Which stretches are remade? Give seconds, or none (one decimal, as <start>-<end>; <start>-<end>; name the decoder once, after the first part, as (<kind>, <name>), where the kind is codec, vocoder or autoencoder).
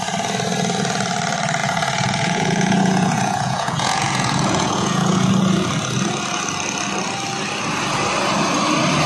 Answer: 1.6-5.3 (vocoder, Vocos)